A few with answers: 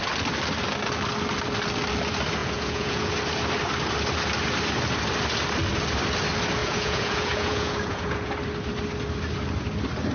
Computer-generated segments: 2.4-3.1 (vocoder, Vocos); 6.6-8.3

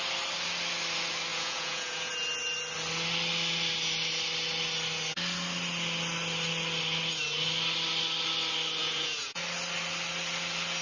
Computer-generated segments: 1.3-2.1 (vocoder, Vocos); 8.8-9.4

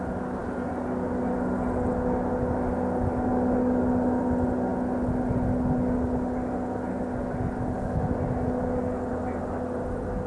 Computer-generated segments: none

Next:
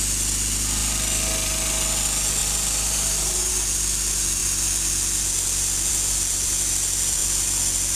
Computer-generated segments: 2.4-3.5 (vocoder, BigVGAN v2)